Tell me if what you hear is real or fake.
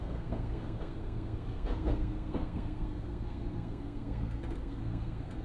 fake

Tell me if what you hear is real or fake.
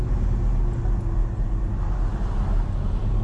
real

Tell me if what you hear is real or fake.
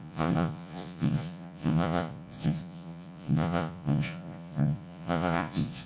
fake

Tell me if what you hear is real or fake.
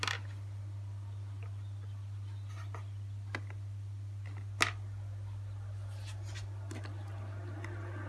real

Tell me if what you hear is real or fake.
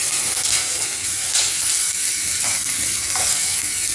fake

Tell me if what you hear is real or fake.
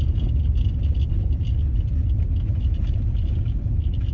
real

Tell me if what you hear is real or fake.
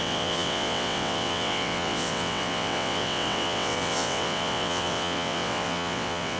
fake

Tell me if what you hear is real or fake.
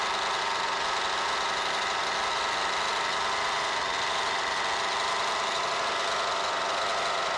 real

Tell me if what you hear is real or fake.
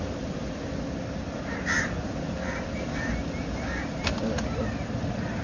real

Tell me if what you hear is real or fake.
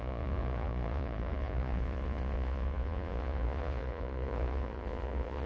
fake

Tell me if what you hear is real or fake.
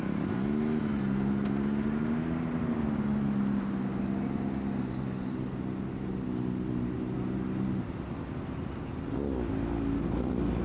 real